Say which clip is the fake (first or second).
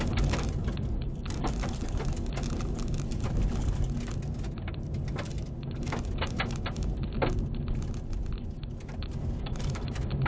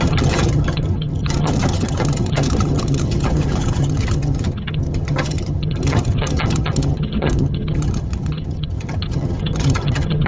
second